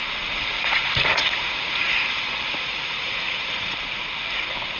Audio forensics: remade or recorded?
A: remade